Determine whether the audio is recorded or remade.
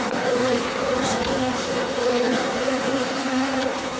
remade